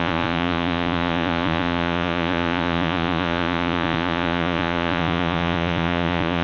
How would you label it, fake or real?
fake